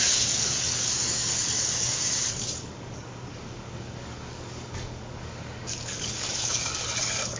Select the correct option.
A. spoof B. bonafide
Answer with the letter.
A